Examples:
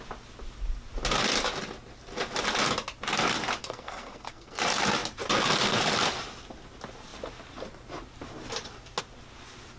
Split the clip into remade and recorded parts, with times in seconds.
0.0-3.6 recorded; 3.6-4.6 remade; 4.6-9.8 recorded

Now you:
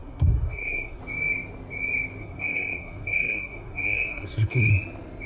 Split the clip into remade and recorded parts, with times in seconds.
0.0-1.0 remade; 1.0-2.2 recorded; 2.2-4.7 remade; 4.7-5.3 recorded

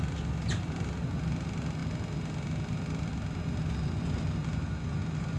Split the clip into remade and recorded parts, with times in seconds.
0.0-5.4 recorded

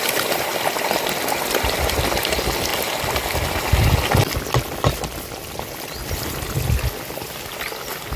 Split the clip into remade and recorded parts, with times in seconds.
0.0-8.2 recorded

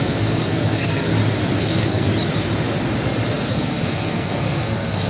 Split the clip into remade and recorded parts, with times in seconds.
0.0-1.1 remade; 1.1-1.6 recorded; 1.6-2.1 remade; 2.1-3.5 recorded; 3.5-5.1 remade

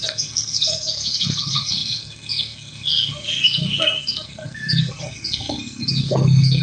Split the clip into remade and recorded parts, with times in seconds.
0.0-6.6 remade

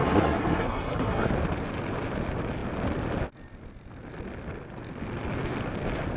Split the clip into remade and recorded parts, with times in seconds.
0.0-1.3 remade; 1.3-6.2 recorded

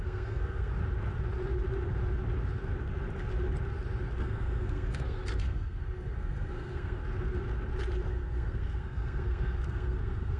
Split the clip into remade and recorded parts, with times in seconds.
0.0-0.7 remade; 0.7-4.2 recorded; 4.2-7.0 remade; 7.0-8.1 recorded; 8.1-10.4 remade